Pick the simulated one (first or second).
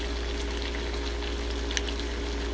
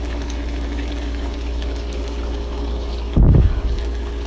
second